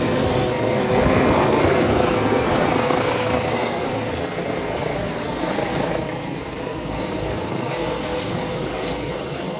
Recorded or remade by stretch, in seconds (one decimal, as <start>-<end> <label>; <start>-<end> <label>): 0.0-9.6 remade